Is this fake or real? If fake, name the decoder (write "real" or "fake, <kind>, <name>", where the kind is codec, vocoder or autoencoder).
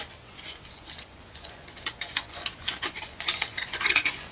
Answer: fake, vocoder, Vocos